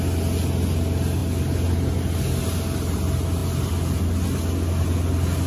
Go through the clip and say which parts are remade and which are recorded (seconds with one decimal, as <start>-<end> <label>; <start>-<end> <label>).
0.0-5.5 recorded